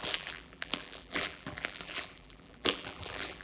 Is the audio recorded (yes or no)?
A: no